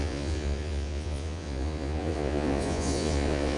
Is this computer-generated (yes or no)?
yes